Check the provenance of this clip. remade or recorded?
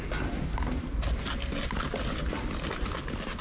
recorded